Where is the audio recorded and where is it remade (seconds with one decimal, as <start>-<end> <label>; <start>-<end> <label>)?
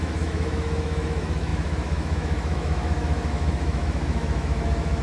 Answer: 0.0-5.0 remade